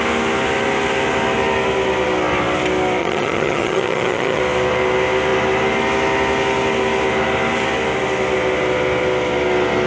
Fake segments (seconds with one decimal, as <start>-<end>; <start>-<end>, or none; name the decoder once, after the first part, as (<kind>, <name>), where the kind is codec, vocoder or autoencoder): 3.0-4.4 (vocoder, HiFi-GAN)